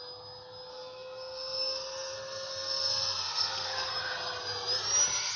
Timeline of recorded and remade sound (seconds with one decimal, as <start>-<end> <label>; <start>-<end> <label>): 0.0-0.7 recorded; 0.7-3.9 remade; 3.9-5.4 recorded